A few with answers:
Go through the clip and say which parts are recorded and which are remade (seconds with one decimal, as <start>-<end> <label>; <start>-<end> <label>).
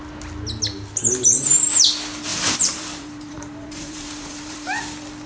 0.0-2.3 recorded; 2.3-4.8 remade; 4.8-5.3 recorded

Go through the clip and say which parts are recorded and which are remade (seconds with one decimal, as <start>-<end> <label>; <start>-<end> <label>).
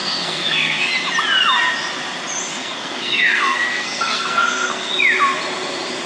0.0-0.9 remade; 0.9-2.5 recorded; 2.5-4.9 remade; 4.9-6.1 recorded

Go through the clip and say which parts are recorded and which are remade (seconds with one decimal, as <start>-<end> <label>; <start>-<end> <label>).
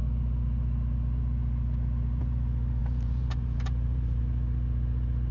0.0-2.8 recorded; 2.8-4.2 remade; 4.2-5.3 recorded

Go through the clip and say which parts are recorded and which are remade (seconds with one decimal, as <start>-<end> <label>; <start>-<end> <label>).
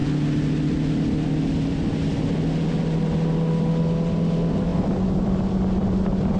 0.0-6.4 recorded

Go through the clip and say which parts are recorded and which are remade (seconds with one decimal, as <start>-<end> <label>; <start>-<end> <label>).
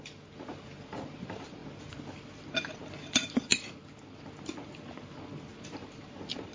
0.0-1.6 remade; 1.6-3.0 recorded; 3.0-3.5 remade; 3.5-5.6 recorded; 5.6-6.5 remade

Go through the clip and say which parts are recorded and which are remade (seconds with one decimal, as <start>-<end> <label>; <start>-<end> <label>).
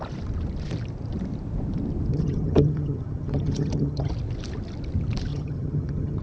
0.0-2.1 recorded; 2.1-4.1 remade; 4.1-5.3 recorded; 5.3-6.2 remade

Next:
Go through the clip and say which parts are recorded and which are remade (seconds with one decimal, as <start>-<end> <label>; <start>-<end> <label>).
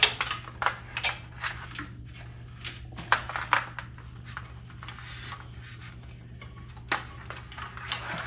0.0-8.3 recorded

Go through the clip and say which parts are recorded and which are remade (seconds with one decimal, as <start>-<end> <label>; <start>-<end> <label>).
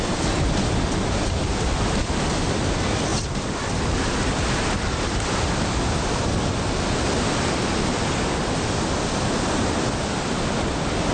0.0-11.1 recorded